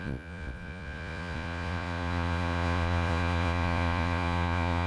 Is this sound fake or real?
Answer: fake